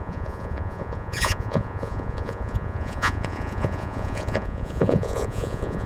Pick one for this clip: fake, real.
fake